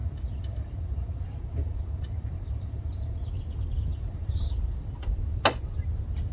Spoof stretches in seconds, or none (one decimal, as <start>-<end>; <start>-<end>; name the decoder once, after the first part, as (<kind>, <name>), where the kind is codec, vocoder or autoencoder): 0.0-3.3 (vocoder, BigVGAN v2); 3.9-4.5